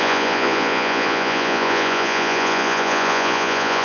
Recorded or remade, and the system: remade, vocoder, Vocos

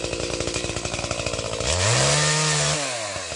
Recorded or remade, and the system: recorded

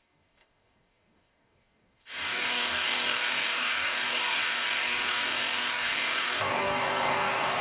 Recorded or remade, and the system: remade, codec, DAC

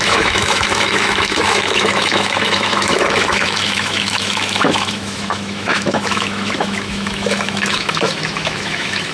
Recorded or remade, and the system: remade, autoencoder, DAC-VAE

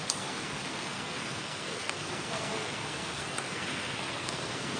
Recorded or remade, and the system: remade, codec, SNAC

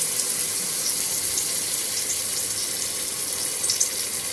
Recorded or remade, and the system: recorded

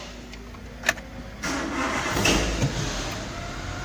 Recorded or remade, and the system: recorded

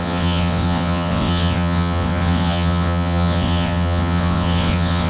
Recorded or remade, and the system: remade, vocoder, WaveNeXt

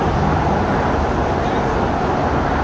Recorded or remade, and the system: recorded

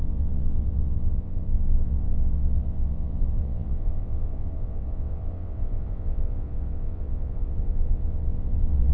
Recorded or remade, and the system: remade, vocoder, WaveNeXt